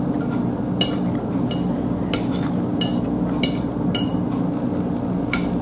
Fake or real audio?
real